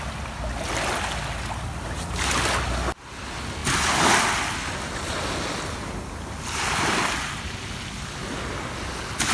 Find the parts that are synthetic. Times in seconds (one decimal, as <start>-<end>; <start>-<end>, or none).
none